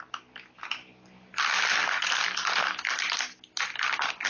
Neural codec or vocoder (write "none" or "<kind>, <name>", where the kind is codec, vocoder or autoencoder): none